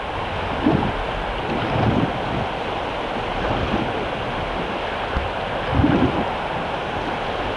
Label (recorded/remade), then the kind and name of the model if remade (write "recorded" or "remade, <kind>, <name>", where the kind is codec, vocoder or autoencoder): recorded